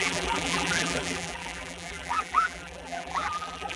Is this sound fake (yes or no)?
yes